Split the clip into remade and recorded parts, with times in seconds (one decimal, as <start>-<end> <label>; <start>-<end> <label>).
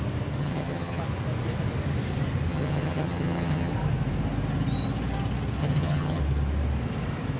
0.0-0.4 recorded; 0.4-1.0 remade; 1.0-2.5 recorded; 2.5-3.7 remade; 3.7-5.6 recorded; 5.6-6.2 remade; 6.2-7.4 recorded